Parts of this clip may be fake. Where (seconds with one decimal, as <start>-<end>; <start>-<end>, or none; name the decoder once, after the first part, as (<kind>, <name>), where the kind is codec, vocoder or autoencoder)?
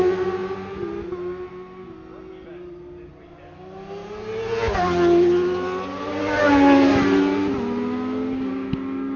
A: none